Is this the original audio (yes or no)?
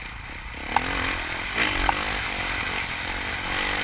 yes